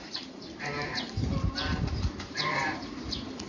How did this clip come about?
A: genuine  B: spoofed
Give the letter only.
B